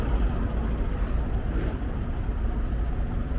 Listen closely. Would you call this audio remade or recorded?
recorded